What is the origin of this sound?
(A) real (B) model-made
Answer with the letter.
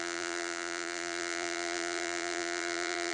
B